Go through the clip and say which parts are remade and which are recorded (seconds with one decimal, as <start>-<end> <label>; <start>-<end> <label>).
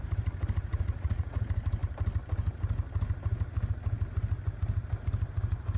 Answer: 0.0-0.7 recorded; 0.7-1.4 remade; 1.4-5.8 recorded